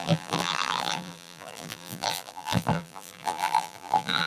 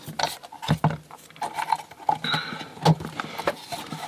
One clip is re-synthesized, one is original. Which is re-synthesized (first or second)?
first